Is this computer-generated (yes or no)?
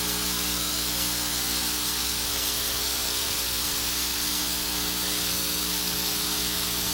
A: yes